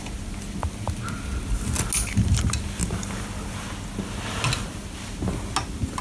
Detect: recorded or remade recorded